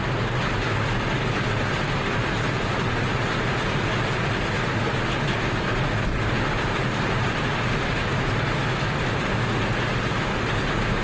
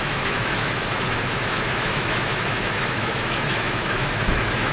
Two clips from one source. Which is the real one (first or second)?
first